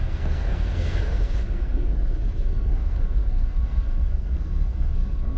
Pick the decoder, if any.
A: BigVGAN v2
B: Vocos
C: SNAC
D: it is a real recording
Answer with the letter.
C